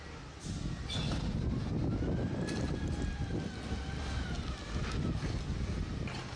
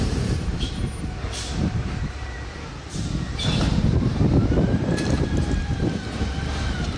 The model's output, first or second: second